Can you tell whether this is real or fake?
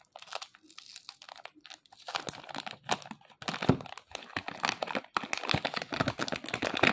real